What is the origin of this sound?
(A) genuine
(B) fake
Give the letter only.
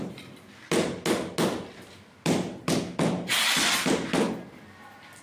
A